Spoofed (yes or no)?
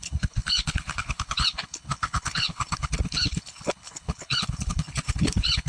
yes